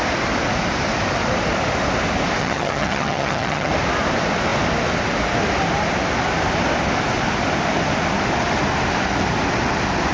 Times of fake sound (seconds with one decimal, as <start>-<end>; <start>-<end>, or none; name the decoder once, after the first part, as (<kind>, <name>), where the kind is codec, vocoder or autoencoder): 2.4-3.7 (vocoder, HiFi-GAN)